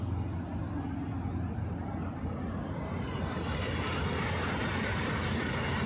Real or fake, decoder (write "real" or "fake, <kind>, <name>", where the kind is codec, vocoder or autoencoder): real